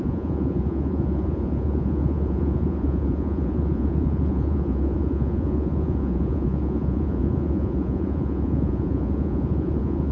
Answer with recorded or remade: remade